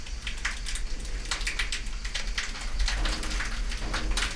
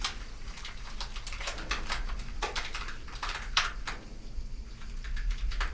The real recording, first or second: first